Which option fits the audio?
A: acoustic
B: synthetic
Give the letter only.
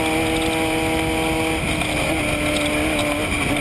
A